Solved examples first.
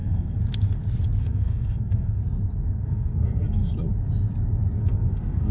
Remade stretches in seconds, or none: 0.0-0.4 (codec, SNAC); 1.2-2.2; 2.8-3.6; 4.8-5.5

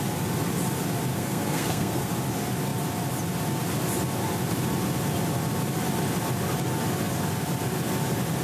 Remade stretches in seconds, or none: 1.1-2.1 (codec, SNAC)

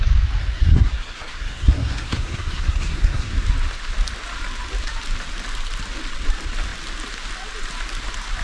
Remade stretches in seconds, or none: 0.4-3.3 (codec, SNAC)

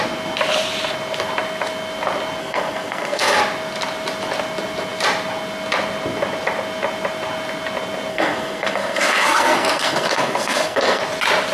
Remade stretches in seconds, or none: 2.4-3.4 (codec, SNAC); 8.1-11.0

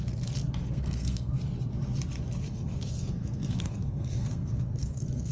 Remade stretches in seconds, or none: 0.6-1.4 (codec, SNAC); 2.4-5.3